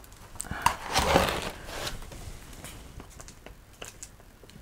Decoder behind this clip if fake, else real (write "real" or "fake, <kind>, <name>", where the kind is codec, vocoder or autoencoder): real